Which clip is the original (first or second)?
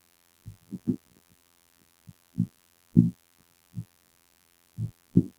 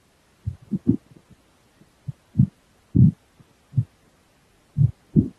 second